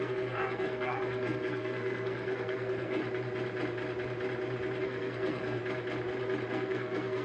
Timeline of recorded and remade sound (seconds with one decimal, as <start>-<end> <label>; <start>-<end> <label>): 0.0-3.0 remade; 3.0-4.8 recorded; 4.8-5.6 remade; 5.6-6.5 recorded; 6.5-7.2 remade